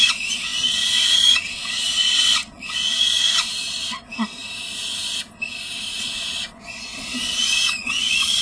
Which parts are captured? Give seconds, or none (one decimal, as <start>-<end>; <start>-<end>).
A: 4.4-6.0

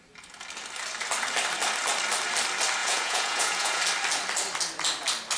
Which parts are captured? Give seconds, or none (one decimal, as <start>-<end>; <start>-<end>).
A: 0.0-2.8; 3.8-5.4

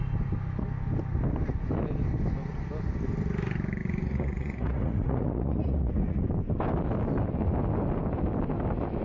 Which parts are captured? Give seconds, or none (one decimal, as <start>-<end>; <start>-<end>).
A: 0.0-3.8; 6.2-9.0

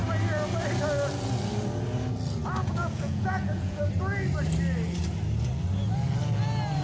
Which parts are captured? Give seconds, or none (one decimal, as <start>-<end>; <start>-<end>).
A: 0.0-2.6; 3.8-6.8

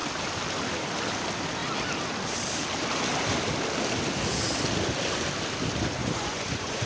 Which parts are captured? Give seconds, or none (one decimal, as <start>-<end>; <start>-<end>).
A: 0.0-6.0

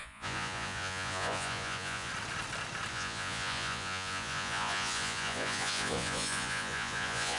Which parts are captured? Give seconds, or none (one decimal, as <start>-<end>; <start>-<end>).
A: 2.1-2.9

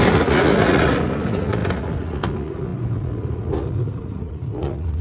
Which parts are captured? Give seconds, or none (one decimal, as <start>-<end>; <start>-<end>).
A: none

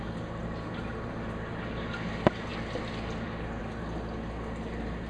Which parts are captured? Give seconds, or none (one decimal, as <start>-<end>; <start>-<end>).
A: 0.0-5.1